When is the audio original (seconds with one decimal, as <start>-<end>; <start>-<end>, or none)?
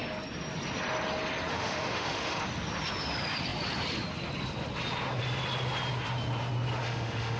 0.0-1.5; 2.4-6.8